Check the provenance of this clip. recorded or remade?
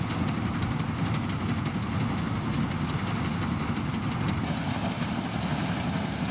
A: recorded